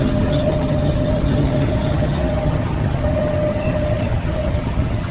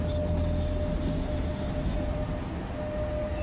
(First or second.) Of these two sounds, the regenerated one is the first